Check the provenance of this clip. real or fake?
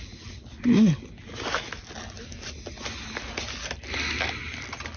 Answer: real